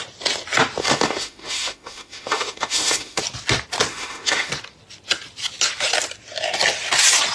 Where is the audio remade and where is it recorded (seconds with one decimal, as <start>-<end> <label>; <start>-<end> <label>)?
0.0-0.8 recorded; 0.8-3.2 remade; 3.2-3.9 recorded; 3.9-4.5 remade; 4.5-7.3 recorded